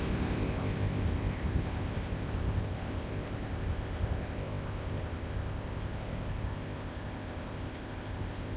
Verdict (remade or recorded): remade